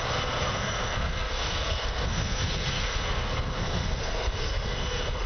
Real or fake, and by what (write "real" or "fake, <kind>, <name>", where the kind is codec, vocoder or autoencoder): fake, codec, SNAC